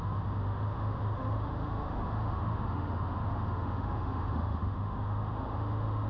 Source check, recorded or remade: remade